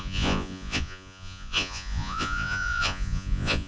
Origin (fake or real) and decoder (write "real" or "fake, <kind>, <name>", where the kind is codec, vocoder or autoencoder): fake, vocoder, Vocos